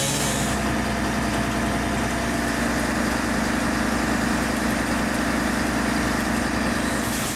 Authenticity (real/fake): real